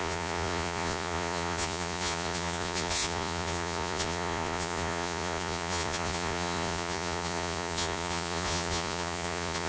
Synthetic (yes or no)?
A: yes